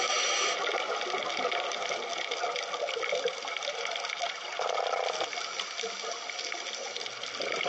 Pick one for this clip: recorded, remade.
recorded